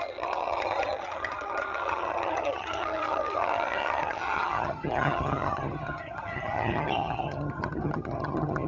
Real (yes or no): no